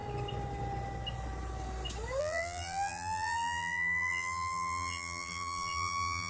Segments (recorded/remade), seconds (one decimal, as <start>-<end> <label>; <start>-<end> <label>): 0.0-2.2 recorded; 2.2-6.3 remade